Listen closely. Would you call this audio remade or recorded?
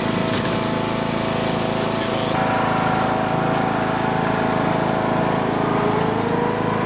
recorded